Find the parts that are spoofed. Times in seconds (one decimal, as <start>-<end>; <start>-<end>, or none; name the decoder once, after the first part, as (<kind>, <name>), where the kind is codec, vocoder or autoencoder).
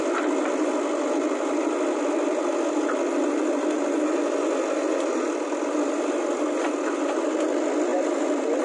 none